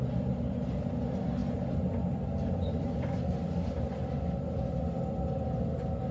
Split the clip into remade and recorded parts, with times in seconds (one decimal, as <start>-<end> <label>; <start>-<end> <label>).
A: 0.0-6.1 recorded